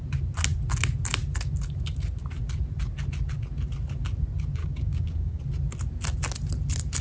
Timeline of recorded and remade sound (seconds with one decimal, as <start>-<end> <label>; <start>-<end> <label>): 0.0-4.6 recorded; 4.6-5.4 remade; 5.4-7.0 recorded